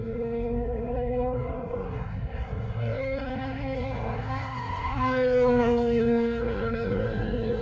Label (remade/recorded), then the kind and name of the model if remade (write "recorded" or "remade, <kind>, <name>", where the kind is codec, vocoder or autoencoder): remade, codec, SNAC